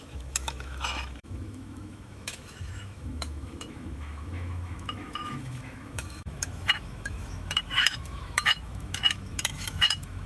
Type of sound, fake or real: fake